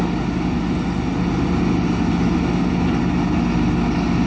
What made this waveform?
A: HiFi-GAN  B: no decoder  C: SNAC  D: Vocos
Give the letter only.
B